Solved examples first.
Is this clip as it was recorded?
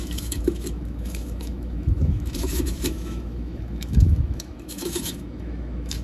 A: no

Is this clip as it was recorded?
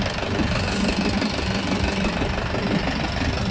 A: yes